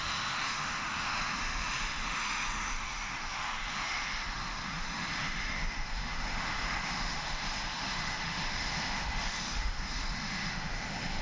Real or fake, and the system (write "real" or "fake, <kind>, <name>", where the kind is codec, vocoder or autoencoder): fake, autoencoder, DAC-VAE